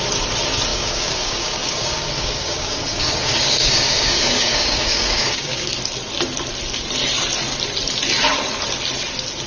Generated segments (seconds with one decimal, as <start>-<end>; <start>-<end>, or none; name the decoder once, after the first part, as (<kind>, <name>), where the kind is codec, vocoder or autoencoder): 0.7-5.7 (codec, DAC)